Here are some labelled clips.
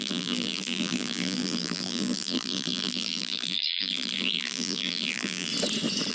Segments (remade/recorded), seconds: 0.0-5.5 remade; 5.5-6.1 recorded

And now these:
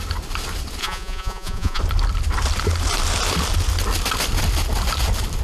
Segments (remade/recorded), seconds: 0.0-0.8 recorded; 0.8-1.8 remade; 1.8-5.4 recorded

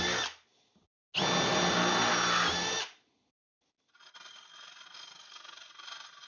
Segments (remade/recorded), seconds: 0.0-6.3 recorded

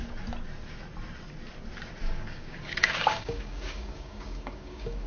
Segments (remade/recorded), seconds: 0.0-2.0 recorded; 2.0-5.1 remade

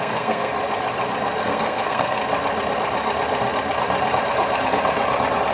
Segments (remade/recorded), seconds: 0.0-0.5 remade; 0.5-1.4 recorded; 1.4-2.2 remade; 2.2-5.5 recorded

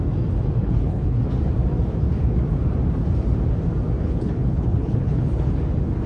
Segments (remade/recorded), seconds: 0.0-0.6 recorded; 0.6-1.2 remade; 1.2-4.0 recorded; 4.0-5.5 remade; 5.5-6.1 recorded

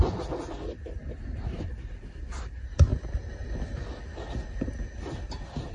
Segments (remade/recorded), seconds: 0.0-2.9 recorded; 2.9-4.0 remade; 4.0-5.7 recorded

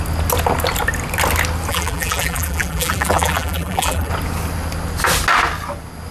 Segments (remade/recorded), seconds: 0.0-1.7 recorded; 1.7-4.1 remade; 4.1-6.1 recorded